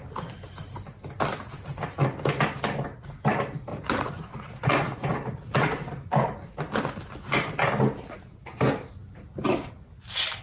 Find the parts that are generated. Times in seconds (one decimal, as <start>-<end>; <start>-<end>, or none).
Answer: 3.7-6.1